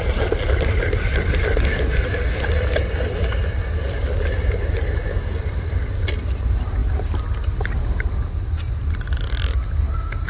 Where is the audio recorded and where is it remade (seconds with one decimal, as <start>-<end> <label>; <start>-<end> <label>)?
0.0-10.3 recorded